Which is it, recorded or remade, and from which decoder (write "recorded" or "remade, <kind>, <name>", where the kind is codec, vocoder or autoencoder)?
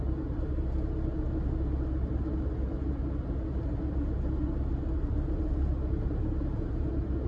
recorded